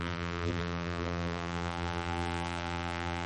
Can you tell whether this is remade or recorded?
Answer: remade